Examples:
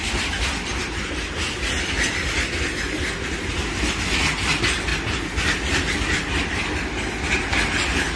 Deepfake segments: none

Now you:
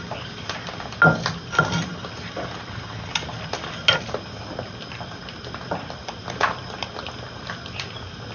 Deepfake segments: none

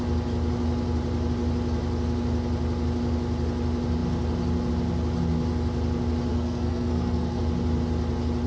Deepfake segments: 6.3-7.4 (codec, SNAC)

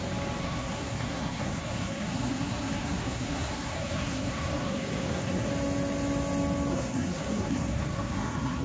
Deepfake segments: 0.4-5.5 (codec, SNAC); 6.7-8.6